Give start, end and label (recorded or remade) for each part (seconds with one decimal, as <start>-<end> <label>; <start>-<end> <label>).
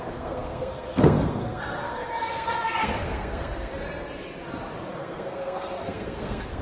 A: 0.0-3.7 remade; 3.7-5.0 recorded; 5.0-6.6 remade